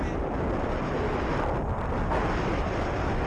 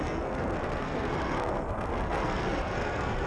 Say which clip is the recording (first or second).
first